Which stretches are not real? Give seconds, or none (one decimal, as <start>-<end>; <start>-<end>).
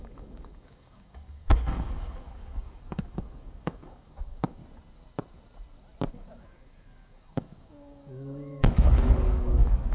0.0-4.6; 6.1-9.9